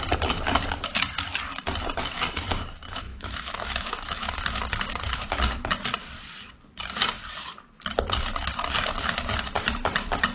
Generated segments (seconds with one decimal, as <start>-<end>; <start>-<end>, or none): 3.1-4.4